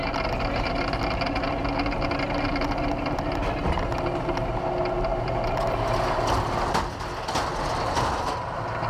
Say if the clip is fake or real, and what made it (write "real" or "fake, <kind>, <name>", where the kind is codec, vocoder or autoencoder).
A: real